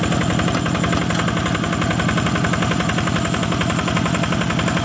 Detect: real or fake real